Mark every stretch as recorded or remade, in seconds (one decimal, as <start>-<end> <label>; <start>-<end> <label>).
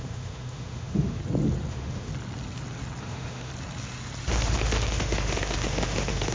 0.0-1.2 remade; 1.2-1.7 recorded; 1.7-2.1 remade; 2.1-3.0 recorded; 3.0-3.5 remade; 3.5-4.3 recorded; 4.3-6.3 remade